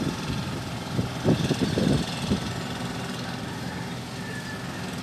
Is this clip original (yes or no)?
yes